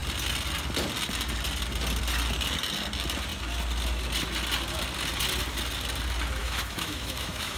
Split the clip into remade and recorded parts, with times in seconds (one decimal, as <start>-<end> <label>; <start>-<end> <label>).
0.0-6.4 recorded; 6.4-7.6 remade